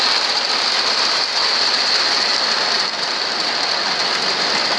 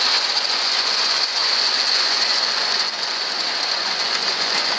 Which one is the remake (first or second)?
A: second